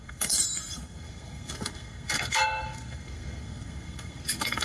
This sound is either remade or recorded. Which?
remade